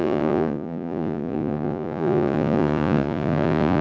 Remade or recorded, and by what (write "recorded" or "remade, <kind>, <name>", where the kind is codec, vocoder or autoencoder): remade, vocoder, Vocos